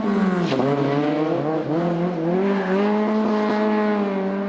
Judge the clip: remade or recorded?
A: recorded